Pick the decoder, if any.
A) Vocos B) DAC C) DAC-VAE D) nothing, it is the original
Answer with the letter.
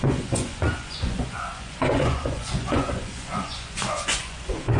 A